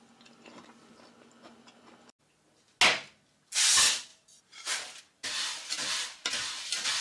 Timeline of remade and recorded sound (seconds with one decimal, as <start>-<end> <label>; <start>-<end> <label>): 0.0-4.1 recorded; 4.1-5.0 remade; 5.0-7.0 recorded